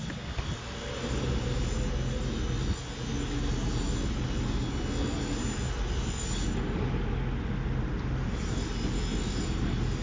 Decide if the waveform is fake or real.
real